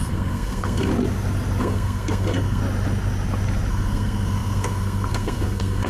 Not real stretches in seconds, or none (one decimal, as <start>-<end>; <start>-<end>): 0.0-0.9; 1.6-2.6; 3.7-5.9